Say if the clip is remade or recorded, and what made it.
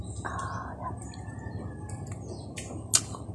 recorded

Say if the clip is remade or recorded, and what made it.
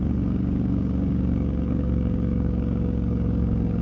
remade, codec, DAC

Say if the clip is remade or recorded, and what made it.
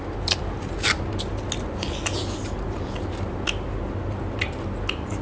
recorded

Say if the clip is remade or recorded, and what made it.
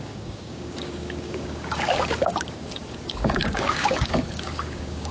remade, codec, DAC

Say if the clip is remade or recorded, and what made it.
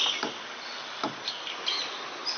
recorded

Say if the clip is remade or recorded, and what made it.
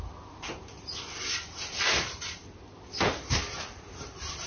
recorded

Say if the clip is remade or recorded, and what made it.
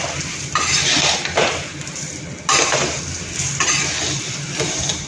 recorded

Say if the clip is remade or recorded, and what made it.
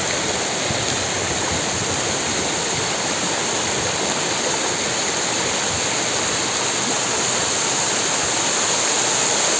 recorded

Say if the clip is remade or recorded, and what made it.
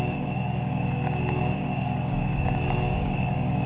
remade, codec, DAC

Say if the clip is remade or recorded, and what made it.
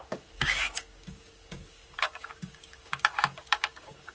remade, codec, DAC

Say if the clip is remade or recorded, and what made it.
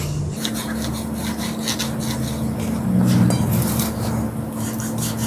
recorded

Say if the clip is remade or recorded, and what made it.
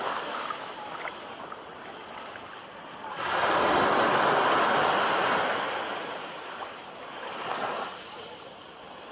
recorded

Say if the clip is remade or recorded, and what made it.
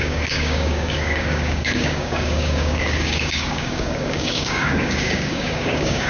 remade, codec, DAC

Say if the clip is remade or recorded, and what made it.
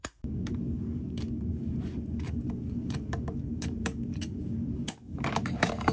remade, codec, DAC